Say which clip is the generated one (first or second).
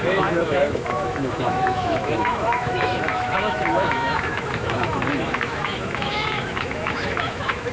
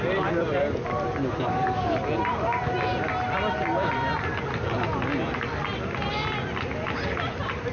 first